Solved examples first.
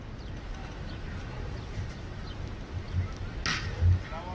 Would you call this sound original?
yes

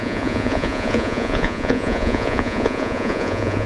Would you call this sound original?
no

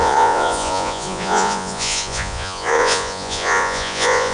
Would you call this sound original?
no